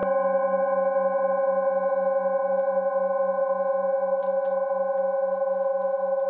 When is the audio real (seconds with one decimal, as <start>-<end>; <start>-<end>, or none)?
0.0-6.3